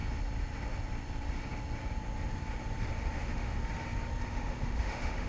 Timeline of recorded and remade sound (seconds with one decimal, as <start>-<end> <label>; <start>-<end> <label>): 0.0-3.2 recorded; 3.2-3.6 remade; 3.6-4.2 recorded; 4.2-5.3 remade